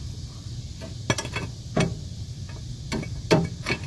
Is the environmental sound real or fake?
real